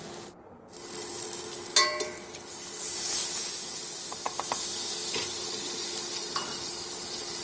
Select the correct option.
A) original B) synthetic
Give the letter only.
A